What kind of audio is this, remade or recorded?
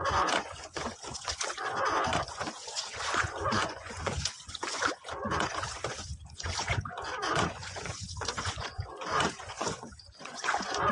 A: remade